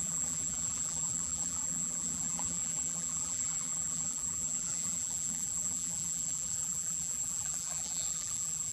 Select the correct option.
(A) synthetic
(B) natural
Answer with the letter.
A